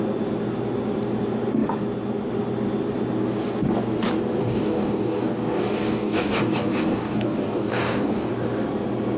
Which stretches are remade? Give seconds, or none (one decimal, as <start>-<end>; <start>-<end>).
4.4-8.3